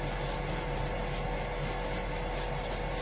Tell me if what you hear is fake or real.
real